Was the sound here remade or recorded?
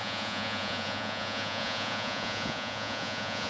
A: remade